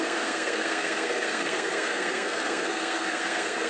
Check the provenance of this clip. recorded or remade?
remade